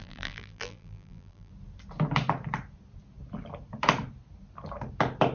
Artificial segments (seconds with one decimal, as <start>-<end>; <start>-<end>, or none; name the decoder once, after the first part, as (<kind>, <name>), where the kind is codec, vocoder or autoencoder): 0.0-1.5 (vocoder, BigVGAN v2)